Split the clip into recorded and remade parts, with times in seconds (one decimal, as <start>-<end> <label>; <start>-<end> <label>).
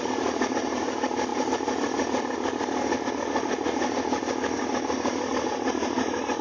0.0-6.4 recorded